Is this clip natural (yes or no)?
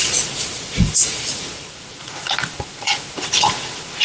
no